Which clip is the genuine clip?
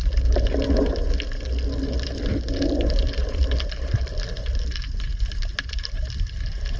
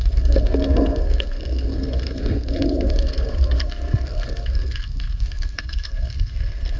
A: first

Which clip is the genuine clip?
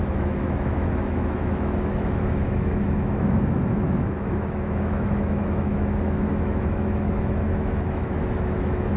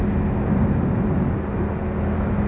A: second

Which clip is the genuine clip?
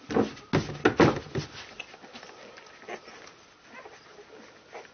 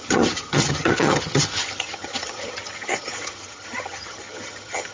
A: first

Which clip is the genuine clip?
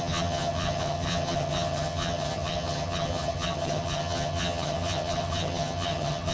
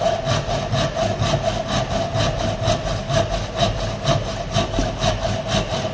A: second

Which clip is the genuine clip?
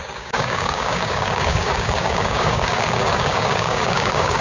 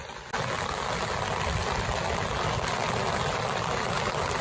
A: second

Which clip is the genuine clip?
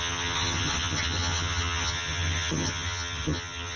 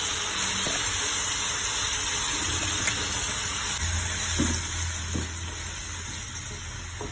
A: second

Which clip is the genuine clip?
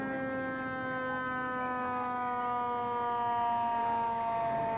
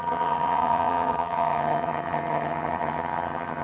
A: first